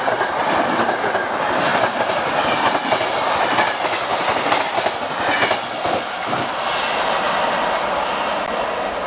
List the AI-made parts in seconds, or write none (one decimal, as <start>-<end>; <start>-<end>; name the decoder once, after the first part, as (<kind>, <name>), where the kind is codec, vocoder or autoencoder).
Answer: 1.7-2.6 (vocoder, BigVGAN v2); 4.1-4.9